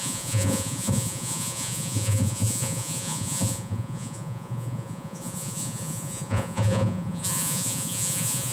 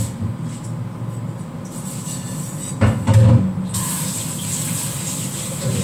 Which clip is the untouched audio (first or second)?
second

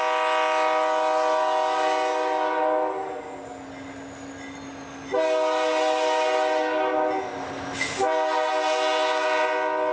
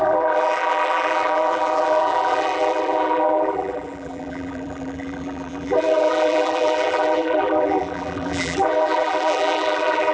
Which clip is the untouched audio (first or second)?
first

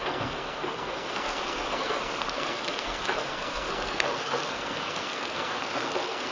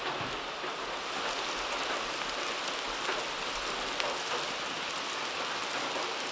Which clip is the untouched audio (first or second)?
second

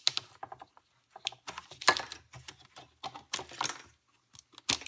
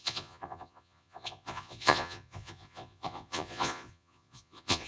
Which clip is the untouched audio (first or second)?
first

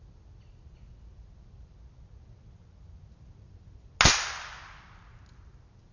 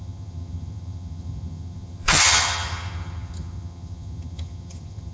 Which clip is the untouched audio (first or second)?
first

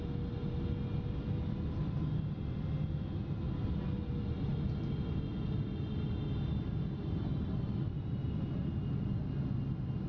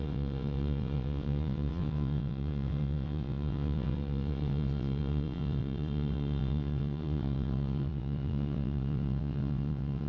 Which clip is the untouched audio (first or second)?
first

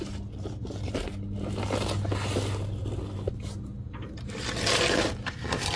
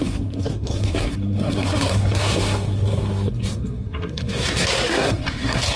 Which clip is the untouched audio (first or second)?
first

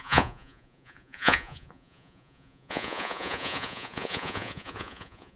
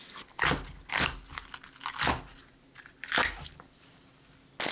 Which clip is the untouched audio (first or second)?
second